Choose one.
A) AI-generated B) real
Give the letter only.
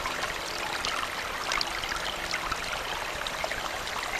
B